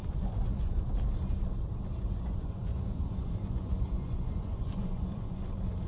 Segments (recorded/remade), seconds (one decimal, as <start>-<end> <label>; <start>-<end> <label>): 0.0-0.8 remade; 0.8-1.9 recorded; 1.9-5.4 remade; 5.4-5.9 recorded